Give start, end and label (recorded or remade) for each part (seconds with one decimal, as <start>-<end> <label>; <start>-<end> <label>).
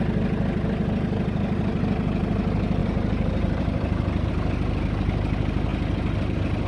0.0-2.8 recorded; 2.8-4.3 remade; 4.3-6.7 recorded